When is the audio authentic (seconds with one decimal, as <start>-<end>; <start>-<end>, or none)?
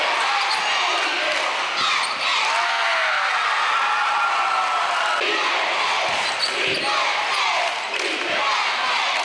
0.0-2.7; 3.3-9.2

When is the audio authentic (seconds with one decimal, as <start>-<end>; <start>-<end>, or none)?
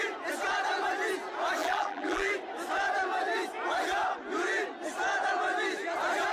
0.0-1.6; 2.3-6.3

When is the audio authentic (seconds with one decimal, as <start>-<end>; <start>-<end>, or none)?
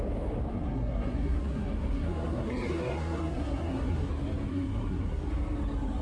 0.0-0.5; 4.1-4.5; 5.3-6.0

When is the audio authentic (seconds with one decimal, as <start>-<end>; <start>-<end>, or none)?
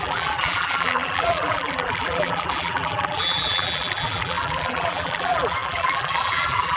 none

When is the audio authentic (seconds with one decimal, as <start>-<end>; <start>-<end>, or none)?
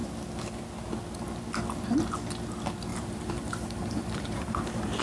0.0-2.9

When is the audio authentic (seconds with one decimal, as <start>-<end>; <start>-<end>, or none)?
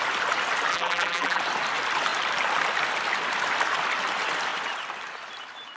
0.0-0.7; 1.4-5.8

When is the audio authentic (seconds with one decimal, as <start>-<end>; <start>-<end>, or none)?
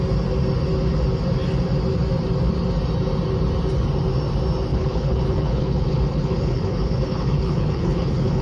0.0-4.7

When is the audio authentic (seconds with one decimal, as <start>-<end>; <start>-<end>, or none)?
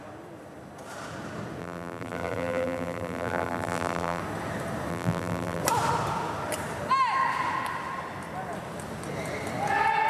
0.0-1.6; 4.2-4.9; 5.6-10.1